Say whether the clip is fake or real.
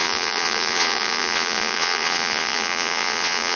fake